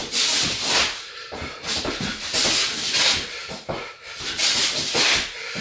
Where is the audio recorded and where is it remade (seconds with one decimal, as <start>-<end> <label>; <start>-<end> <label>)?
0.0-0.8 remade; 0.8-5.6 recorded